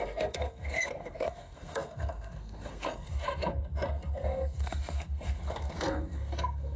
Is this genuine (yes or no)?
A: no